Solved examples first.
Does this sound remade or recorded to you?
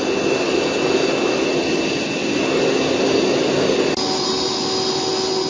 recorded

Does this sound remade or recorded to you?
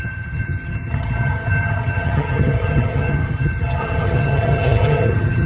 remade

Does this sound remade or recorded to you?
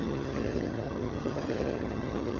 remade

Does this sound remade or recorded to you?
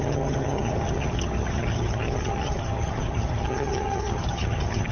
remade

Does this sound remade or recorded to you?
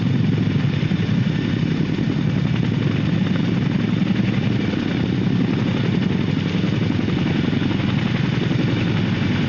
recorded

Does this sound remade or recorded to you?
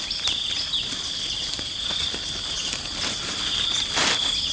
recorded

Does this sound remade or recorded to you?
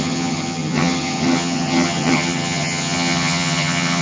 remade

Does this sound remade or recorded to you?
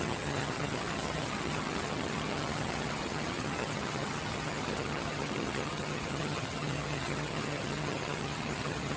remade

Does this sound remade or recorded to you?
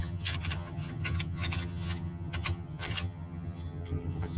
remade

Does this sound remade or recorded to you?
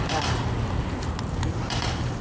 recorded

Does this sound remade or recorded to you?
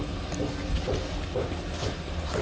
recorded